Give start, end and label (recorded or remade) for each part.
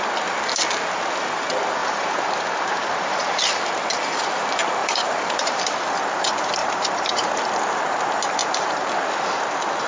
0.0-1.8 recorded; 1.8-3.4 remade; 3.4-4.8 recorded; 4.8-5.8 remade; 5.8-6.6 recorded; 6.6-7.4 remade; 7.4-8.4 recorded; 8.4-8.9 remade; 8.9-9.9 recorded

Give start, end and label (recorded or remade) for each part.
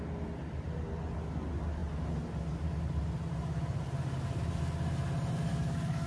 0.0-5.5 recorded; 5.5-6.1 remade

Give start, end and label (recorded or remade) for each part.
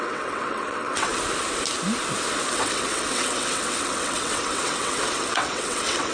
0.0-1.1 remade; 1.1-2.5 recorded; 2.5-6.1 remade